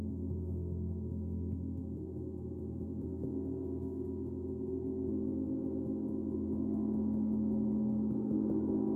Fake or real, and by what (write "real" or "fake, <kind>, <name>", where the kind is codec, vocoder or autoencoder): fake, autoencoder, DAC-VAE